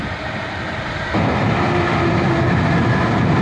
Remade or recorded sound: recorded